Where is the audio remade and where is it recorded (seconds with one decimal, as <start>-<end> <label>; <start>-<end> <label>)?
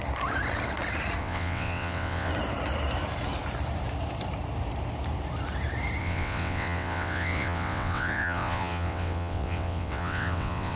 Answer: 0.0-1.2 recorded; 1.2-2.3 remade; 2.3-6.0 recorded; 6.0-10.8 remade